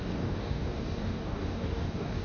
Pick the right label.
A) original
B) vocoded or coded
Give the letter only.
B